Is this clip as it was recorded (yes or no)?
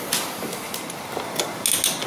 yes